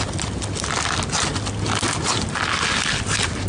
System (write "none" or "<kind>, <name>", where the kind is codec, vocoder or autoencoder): none